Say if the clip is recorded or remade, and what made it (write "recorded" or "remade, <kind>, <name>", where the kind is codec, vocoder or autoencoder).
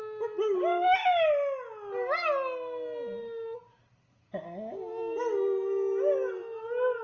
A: recorded